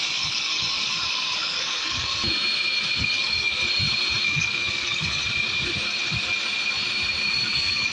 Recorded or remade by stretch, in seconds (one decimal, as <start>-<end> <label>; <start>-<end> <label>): 0.0-2.1 remade; 2.1-3.0 recorded; 3.0-3.6 remade; 3.6-4.2 recorded; 4.2-5.2 remade; 5.2-7.3 recorded; 7.3-7.9 remade